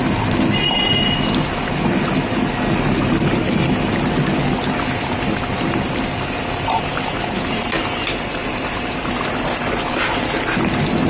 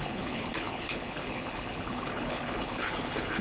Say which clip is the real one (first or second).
first